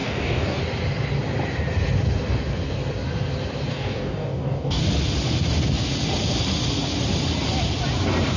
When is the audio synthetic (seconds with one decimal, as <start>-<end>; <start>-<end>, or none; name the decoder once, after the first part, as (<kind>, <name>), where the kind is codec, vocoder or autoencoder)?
0.0-0.6 (codec, DAC); 3.7-4.8